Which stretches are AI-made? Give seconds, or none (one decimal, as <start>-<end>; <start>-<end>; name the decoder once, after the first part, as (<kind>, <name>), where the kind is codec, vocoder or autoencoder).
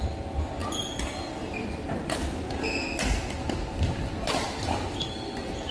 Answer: none